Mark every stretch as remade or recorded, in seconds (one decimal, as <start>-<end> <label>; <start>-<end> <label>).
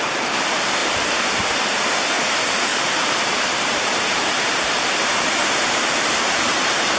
0.0-7.0 remade